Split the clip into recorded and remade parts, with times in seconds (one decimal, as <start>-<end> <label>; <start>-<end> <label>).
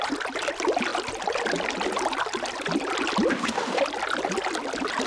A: 0.0-3.3 recorded; 3.3-3.8 remade; 3.8-5.1 recorded